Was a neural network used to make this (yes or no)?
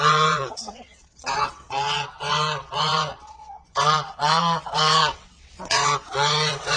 yes